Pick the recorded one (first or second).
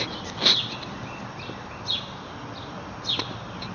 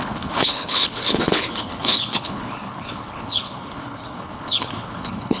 first